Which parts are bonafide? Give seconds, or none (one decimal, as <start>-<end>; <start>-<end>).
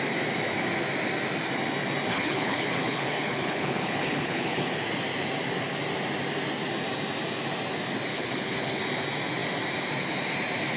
0.0-2.1; 4.7-8.1; 8.8-10.8